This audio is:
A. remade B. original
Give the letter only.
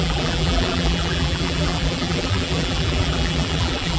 A